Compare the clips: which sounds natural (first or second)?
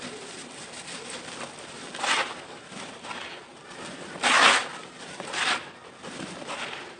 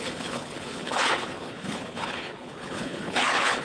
first